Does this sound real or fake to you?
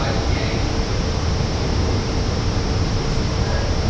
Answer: real